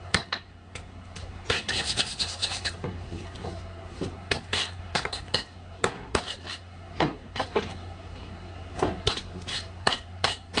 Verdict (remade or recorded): remade